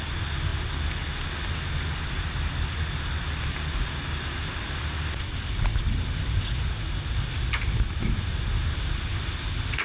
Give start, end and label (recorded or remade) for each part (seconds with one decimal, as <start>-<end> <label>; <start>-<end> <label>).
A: 0.0-9.8 recorded